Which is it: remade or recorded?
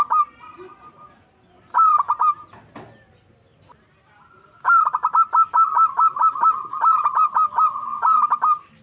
recorded